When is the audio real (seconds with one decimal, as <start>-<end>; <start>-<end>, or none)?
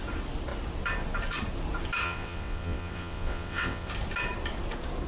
0.0-2.0; 3.9-5.1